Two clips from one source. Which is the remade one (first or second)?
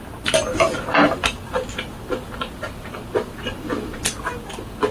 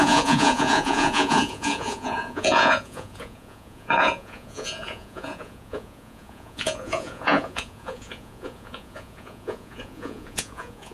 second